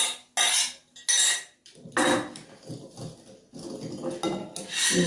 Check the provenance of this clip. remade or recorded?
recorded